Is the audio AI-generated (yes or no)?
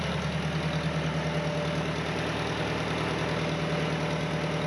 no